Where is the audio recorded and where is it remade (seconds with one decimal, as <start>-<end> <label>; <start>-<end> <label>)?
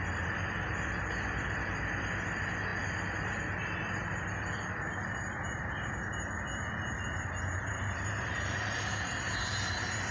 0.0-7.7 recorded; 7.7-9.1 remade; 9.1-10.1 recorded